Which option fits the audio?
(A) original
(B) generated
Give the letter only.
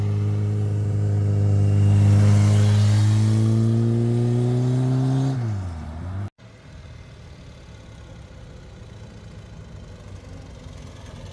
A